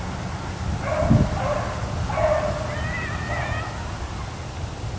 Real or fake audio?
real